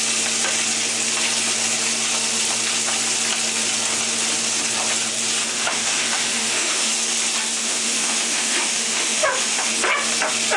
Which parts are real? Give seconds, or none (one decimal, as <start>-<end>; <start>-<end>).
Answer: 0.0-5.4; 6.9-7.6; 9.7-10.6